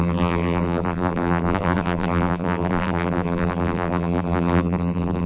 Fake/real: fake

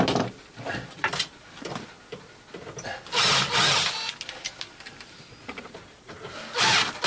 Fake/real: real